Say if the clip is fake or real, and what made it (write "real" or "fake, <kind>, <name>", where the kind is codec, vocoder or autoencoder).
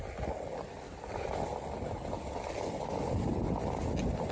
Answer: real